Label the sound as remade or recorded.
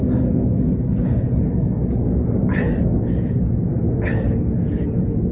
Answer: recorded